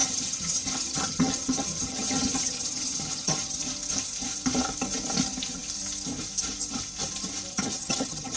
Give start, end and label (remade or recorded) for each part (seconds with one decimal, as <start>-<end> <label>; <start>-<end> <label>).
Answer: 0.0-3.6 remade; 3.6-7.5 recorded; 7.5-8.4 remade